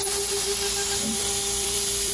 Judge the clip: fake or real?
fake